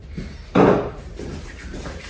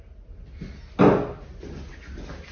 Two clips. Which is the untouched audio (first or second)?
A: second